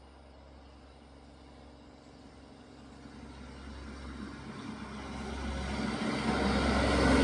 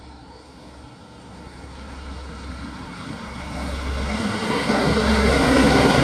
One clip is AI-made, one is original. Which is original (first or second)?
first